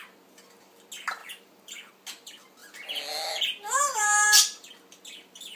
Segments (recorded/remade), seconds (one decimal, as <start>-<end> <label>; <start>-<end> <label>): 0.0-1.2 recorded; 1.2-1.9 remade; 1.9-3.6 recorded; 3.6-4.7 remade; 4.7-5.6 recorded